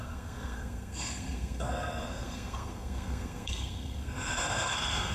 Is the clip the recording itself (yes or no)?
no